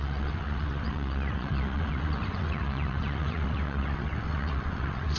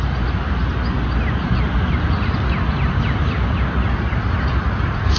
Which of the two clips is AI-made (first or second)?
first